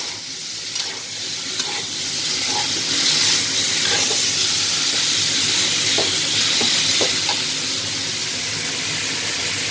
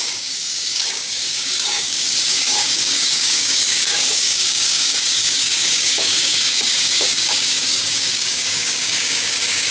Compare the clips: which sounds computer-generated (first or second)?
second